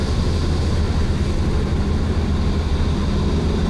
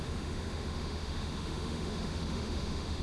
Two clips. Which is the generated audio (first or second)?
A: second